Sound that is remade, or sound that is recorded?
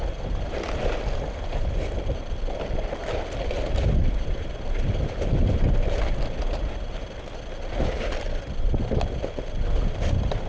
recorded